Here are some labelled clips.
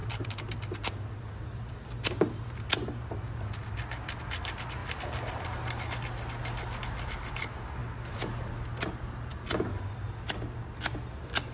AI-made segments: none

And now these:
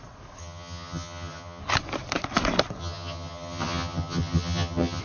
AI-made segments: 0.4-1.6 (vocoder, HiFi-GAN); 2.8-5.0

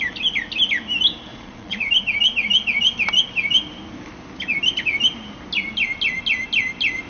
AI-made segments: 1.3-1.9 (vocoder, Vocos)

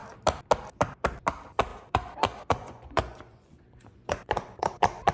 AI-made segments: 1.7-5.1 (vocoder, Vocos)

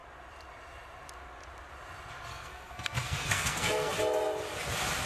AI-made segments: 2.3-3.9 (codec, SNAC)

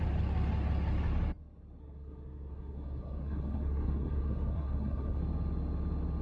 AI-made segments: 1.8-5.2 (codec, SNAC)